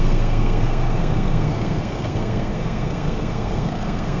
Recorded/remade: remade